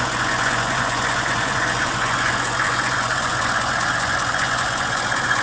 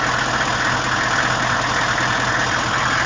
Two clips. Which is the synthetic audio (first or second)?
first